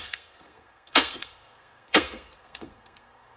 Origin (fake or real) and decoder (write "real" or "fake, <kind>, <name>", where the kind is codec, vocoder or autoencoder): fake, codec, SNAC